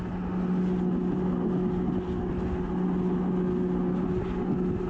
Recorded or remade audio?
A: recorded